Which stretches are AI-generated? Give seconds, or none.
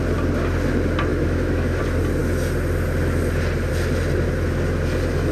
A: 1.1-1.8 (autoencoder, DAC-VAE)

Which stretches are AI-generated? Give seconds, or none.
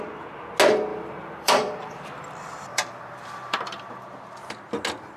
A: 0.9-4.0 (vocoder, BigVGAN v2)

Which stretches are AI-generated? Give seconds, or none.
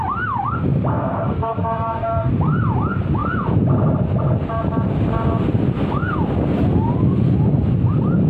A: 0.9-2.3 (codec, SNAC)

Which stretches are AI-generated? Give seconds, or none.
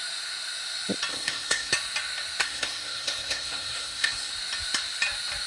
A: 1.1-1.7 (codec, SNAC); 2.4-4.3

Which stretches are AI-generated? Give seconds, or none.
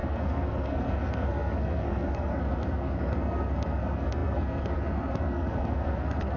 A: 0.0-6.4 (codec, SNAC)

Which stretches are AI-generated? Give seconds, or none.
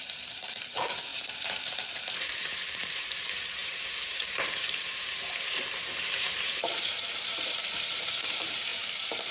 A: 0.0-9.3 (vocoder, BigVGAN v2)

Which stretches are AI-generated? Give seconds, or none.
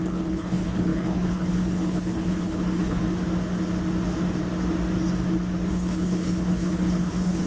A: 0.0-3.0 (codec, HILCodec); 5.7-7.5